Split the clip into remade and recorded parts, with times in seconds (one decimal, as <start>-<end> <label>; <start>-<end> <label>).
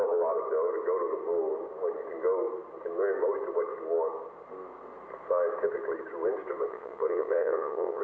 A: 0.0-6.7 recorded; 6.7-8.0 remade